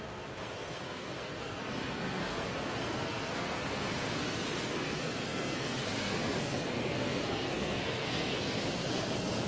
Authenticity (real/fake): fake